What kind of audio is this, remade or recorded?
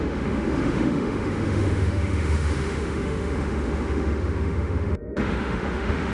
remade